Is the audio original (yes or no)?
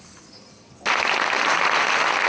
yes